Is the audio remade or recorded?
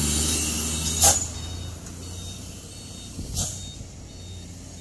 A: recorded